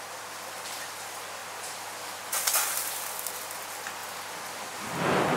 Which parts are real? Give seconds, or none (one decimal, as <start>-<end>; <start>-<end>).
0.0-5.4